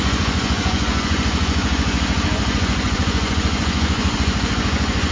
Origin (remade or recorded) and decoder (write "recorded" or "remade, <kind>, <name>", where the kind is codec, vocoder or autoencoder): remade, vocoder, Vocos